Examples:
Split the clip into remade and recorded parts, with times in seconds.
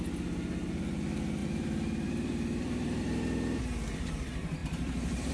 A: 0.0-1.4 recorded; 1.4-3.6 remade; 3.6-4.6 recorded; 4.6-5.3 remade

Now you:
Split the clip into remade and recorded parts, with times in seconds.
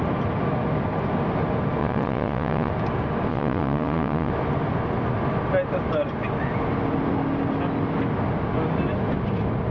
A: 0.0-1.8 recorded; 1.8-2.7 remade; 2.7-3.3 recorded; 3.3-4.3 remade; 4.3-9.7 recorded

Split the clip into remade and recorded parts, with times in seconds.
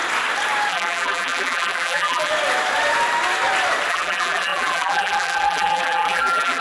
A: 0.0-0.7 recorded; 0.7-2.3 remade; 2.3-3.9 recorded; 3.9-6.6 remade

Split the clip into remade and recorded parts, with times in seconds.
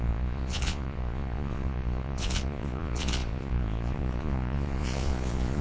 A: 0.0-5.6 remade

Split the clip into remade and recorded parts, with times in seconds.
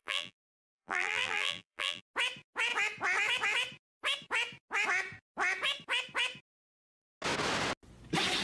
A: 0.0-2.0 remade; 2.0-8.4 recorded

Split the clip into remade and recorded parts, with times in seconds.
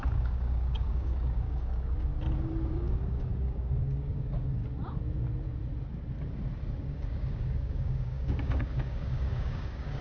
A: 0.0-2.1 remade; 2.1-2.7 recorded; 2.7-4.6 remade; 4.6-6.8 recorded; 6.8-10.0 remade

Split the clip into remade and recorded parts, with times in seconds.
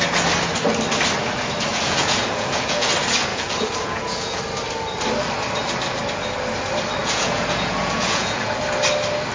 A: 0.0-1.7 recorded; 1.7-2.9 remade; 2.9-3.3 recorded; 3.3-4.4 remade; 4.4-7.0 recorded; 7.0-8.5 remade; 8.5-9.3 recorded